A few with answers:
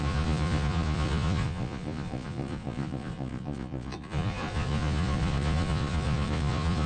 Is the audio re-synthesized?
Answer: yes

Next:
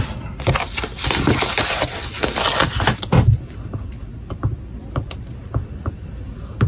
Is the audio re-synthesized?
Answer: no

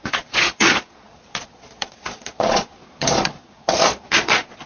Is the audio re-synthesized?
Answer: yes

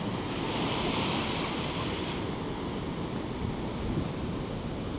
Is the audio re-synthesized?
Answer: no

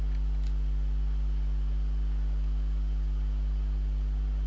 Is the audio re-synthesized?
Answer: no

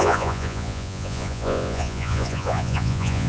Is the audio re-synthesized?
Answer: yes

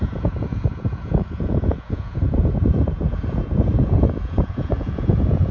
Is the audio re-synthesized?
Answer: yes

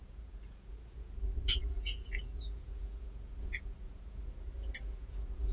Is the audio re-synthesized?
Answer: yes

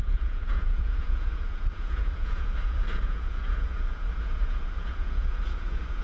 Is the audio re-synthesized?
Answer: yes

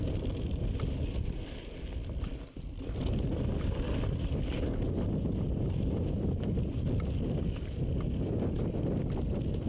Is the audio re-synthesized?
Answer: no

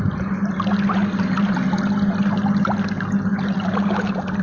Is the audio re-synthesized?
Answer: no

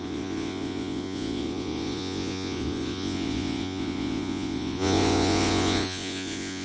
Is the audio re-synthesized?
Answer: yes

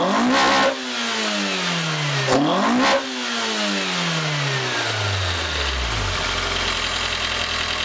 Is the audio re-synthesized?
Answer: no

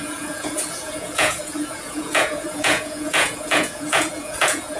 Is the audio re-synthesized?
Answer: yes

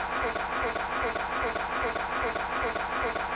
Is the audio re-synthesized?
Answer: no